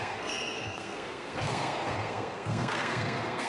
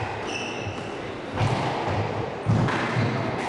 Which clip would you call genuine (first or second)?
second